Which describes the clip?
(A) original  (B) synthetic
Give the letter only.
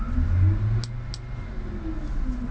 A